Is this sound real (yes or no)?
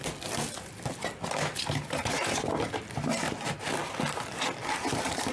yes